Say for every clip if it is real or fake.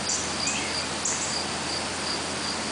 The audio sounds real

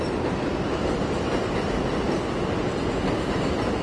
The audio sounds real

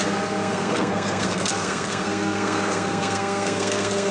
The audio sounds fake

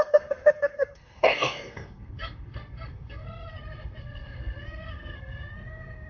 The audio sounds fake